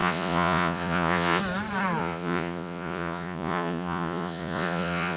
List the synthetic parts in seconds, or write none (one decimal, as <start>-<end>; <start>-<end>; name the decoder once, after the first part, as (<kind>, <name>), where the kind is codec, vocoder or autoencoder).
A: 0.0-1.4 (vocoder, Vocos); 2.0-5.2